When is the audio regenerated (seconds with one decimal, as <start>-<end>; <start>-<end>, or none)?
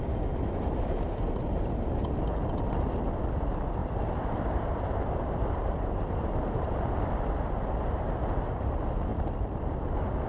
3.8-7.3